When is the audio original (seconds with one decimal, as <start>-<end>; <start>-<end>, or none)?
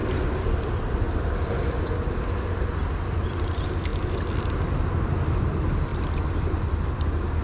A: 0.0-7.4